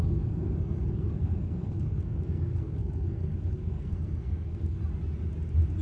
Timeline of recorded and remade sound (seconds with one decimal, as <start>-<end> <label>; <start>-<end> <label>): 0.0-4.8 remade; 4.8-5.8 recorded